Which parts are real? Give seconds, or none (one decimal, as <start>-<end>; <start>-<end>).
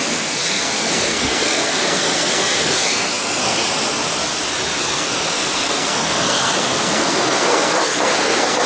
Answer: 3.6-4.8